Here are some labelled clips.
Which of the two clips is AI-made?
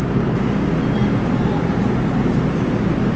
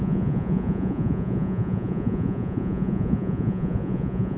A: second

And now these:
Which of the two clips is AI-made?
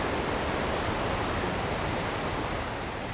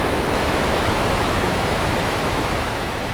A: second